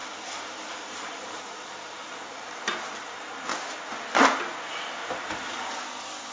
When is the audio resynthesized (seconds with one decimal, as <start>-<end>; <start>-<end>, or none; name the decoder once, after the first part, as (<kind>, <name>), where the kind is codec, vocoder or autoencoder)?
0.0-3.8 (vocoder, BigVGAN v2); 5.0-5.7